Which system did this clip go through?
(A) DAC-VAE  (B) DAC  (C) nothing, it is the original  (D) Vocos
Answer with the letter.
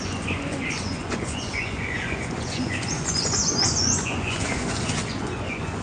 D